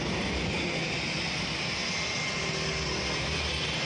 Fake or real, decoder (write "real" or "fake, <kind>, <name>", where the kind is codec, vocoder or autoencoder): real